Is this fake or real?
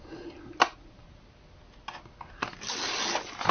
real